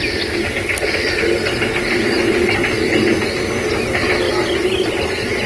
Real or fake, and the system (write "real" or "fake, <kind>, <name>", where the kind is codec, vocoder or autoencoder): real